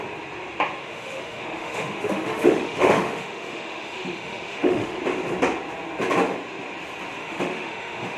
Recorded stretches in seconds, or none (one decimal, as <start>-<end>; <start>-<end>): 0.0-0.8; 5.0-7.2